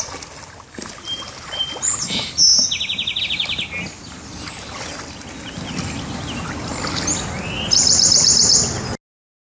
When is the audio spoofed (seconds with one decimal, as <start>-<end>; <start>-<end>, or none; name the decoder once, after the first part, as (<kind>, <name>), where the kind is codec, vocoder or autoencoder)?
none